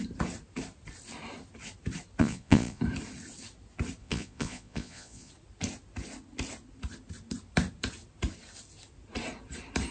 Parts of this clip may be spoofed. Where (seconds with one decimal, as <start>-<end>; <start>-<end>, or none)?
2.2-2.8; 4.0-5.3